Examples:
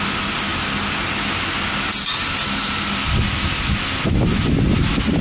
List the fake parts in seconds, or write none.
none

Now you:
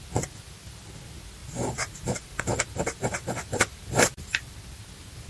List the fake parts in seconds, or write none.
1.4-4.6 (vocoder, BigVGAN v2)

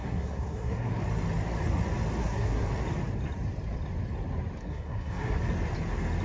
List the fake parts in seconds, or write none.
0.0-1.0 (codec, SNAC); 2.2-2.7; 4.6-5.4

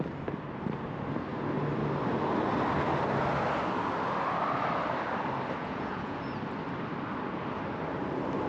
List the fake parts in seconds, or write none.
5.6-6.2 (vocoder, Vocos)

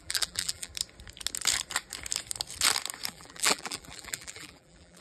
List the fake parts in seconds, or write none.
0.0-0.7 (vocoder, BigVGAN v2); 3.1-5.0

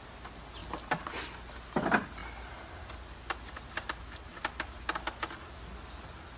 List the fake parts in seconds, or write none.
none

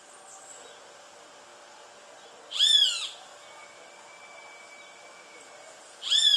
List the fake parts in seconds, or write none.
none